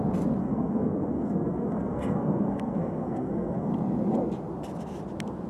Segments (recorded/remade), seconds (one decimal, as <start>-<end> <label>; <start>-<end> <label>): 0.0-0.4 recorded; 0.4-3.7 remade; 3.7-5.5 recorded